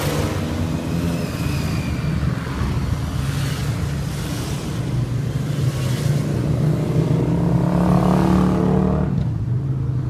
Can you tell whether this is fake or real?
real